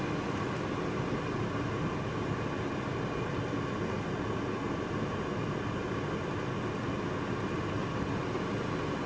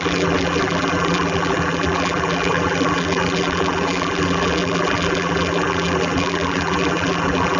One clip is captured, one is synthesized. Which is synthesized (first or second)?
second